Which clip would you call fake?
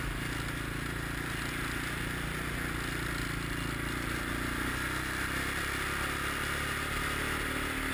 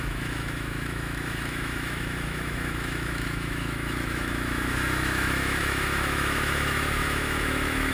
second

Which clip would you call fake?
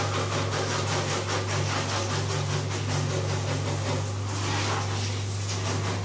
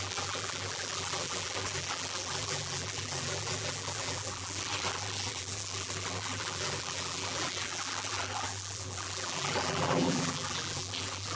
second